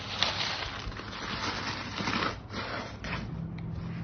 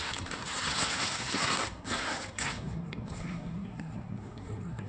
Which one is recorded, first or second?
first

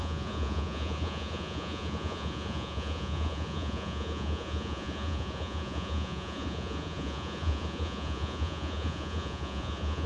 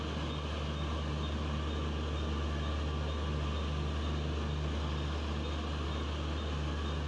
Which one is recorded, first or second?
second